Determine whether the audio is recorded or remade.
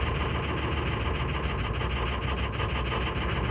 recorded